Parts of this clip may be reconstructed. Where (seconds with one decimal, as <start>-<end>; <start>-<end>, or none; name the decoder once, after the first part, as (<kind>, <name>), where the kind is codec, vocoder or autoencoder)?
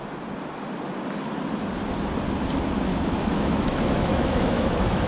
2.9-5.1 (autoencoder, DAC-VAE)